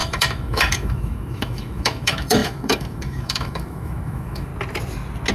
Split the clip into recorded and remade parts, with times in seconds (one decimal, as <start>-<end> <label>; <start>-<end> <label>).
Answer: 0.0-4.5 remade; 4.5-5.3 recorded